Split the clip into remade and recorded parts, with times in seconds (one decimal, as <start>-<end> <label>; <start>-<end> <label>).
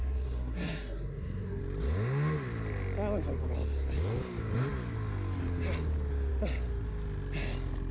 0.0-1.6 remade; 1.6-7.9 recorded